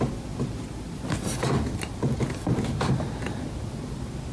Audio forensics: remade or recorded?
recorded